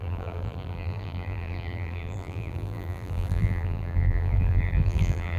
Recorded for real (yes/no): no